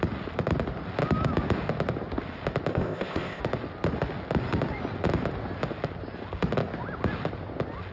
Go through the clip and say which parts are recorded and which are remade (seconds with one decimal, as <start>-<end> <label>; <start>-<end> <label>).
0.0-2.7 recorded; 2.7-3.4 remade; 3.4-7.9 recorded